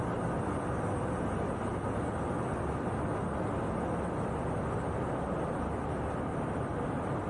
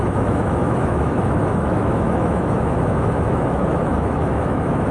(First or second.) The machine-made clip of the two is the second